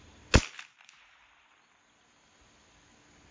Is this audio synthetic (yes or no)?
no